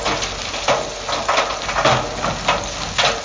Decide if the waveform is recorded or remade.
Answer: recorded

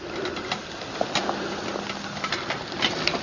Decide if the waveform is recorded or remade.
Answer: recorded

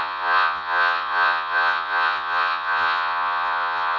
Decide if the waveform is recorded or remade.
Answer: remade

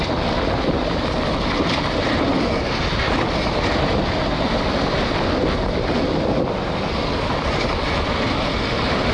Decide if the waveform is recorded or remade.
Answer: recorded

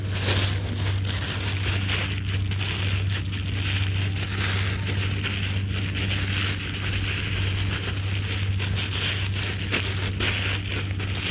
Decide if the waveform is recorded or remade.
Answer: recorded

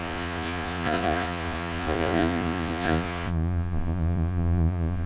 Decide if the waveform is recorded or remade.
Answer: remade